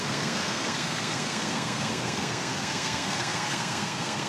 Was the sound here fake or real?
fake